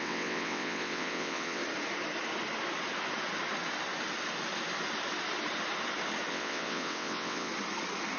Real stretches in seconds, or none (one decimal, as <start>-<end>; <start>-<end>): 1.6-6.3; 7.5-8.2

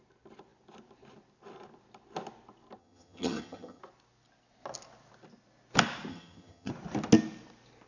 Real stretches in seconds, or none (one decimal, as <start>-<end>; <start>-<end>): 0.0-2.8; 3.8-6.1; 6.7-7.9

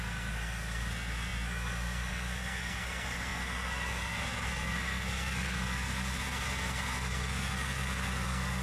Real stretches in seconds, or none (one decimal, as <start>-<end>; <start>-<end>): none